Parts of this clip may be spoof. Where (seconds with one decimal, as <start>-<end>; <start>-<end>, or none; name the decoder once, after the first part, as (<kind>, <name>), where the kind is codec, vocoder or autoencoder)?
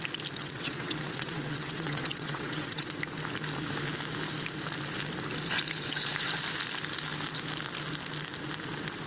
0.4-3.0 (vocoder, WaveNeXt)